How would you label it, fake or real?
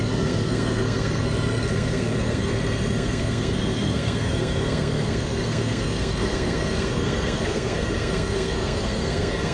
fake